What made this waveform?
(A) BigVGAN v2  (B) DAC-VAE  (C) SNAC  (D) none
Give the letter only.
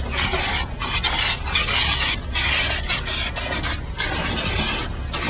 D